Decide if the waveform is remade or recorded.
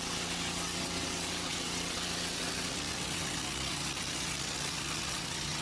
remade